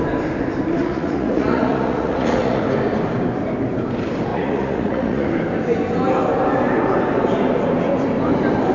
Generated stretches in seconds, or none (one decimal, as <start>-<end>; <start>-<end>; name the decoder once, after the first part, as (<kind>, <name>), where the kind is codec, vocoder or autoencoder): 0.8-2.6 (vocoder, Vocos); 4.3-5.3